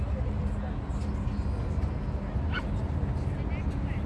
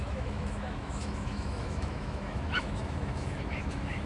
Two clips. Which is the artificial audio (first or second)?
second